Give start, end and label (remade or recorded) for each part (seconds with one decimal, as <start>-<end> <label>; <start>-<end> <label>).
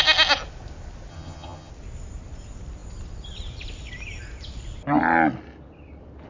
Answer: 0.0-1.1 recorded; 1.1-1.7 remade; 1.7-6.3 recorded